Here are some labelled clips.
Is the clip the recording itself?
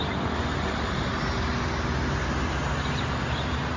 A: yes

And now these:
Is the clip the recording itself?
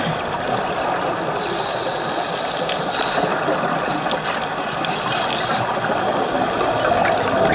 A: yes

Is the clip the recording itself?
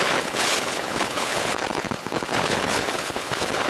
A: no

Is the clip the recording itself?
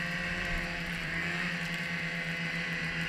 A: no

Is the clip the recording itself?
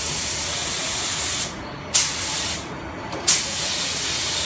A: no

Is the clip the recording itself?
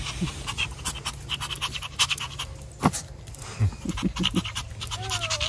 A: yes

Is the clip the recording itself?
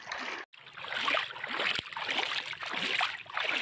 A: yes